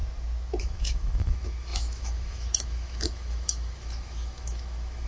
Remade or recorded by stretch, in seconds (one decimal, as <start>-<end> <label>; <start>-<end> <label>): 0.0-0.6 recorded; 0.6-5.1 remade